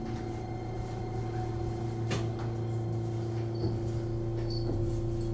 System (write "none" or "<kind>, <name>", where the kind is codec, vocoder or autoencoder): none